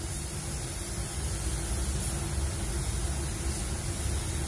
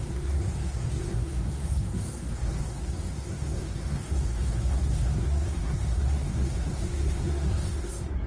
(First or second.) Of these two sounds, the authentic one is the first